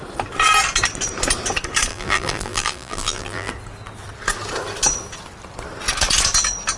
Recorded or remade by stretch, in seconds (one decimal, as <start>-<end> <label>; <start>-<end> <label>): 0.0-1.9 recorded; 1.9-3.5 remade; 3.5-6.8 recorded